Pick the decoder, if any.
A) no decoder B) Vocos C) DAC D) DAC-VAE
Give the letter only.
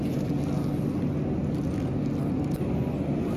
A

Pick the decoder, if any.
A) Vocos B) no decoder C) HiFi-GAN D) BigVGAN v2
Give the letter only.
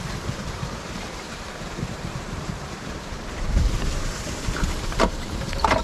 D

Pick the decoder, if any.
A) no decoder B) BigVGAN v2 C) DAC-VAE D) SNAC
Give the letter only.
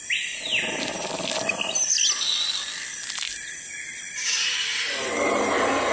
A